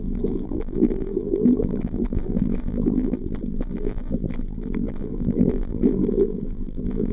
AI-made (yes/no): yes